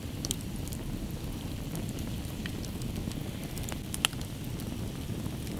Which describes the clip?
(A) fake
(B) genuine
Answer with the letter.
B